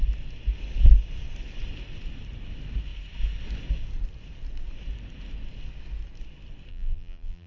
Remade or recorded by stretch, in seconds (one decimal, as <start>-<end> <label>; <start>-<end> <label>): 0.0-6.7 recorded; 6.7-7.5 remade